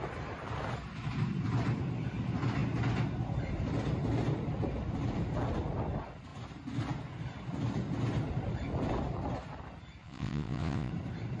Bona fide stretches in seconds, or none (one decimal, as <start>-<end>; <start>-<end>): 0.0-10.0; 10.9-11.4